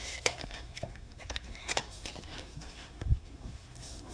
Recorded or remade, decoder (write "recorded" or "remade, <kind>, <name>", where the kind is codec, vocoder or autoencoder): remade, codec, SNAC